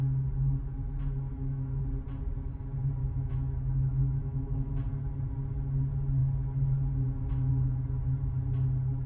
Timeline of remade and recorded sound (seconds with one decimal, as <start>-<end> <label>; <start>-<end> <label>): 0.0-1.3 recorded; 1.3-1.8 remade; 1.8-3.0 recorded; 3.0-4.7 remade; 4.7-9.1 recorded